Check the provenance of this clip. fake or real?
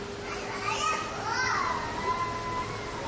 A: real